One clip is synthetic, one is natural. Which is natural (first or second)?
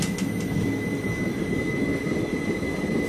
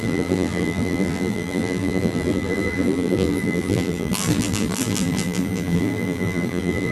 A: first